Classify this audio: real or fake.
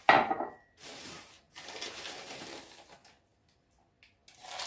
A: real